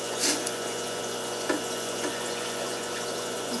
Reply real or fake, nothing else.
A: fake